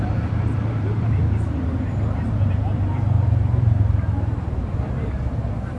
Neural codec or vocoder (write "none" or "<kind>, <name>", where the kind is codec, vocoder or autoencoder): vocoder, BigVGAN v2